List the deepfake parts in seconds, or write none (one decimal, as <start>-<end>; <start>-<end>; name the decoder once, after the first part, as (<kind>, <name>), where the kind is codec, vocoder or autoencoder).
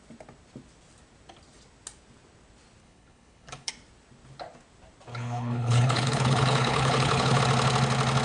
2.8-3.7 (codec, HILCodec); 5.1-7.4